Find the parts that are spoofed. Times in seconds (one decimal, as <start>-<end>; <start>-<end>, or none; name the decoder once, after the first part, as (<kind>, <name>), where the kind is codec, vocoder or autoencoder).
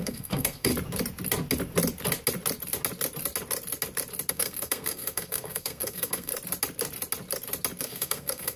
0.0-0.7 (codec, SNAC); 4.3-6.3; 7.8-8.6